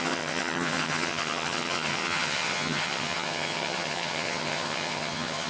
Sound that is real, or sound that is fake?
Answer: fake